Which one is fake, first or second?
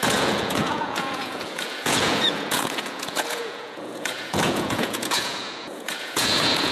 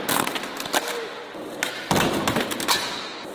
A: first